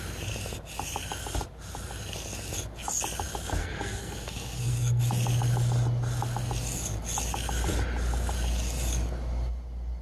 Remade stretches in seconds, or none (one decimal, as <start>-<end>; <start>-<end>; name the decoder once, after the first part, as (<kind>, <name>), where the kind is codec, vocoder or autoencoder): 3.6-5.0 (codec, SNAC)